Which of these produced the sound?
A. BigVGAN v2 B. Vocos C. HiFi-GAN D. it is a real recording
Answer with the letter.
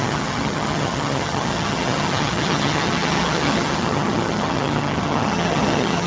C